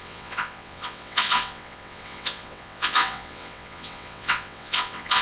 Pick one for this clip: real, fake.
fake